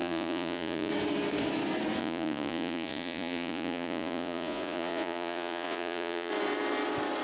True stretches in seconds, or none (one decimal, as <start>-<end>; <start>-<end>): 0.9-2.0; 6.3-7.2